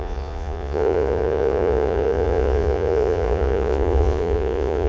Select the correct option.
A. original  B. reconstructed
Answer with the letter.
B